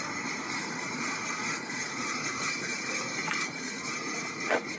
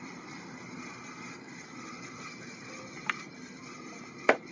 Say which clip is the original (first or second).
second